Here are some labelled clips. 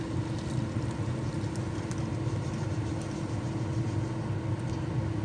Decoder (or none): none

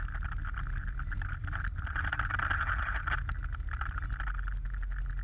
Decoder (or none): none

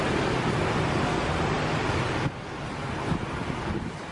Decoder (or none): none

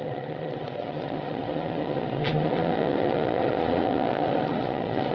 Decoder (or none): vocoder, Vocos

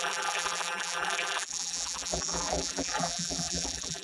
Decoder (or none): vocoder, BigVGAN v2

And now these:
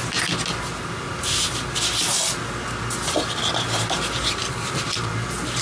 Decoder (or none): none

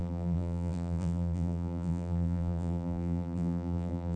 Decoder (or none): vocoder, BigVGAN v2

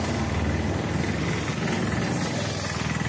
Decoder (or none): none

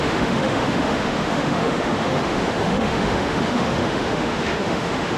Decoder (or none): autoencoder, DAC-VAE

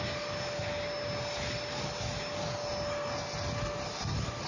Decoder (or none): none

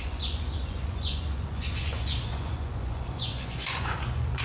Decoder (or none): vocoder, Vocos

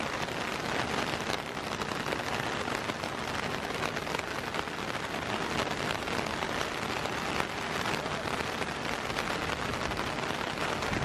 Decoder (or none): none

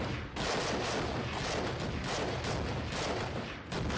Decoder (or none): none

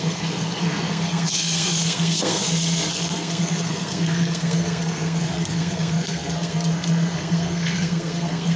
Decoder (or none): codec, SNAC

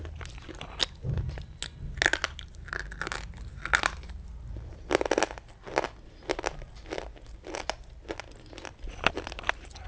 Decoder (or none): none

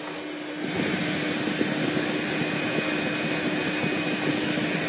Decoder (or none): none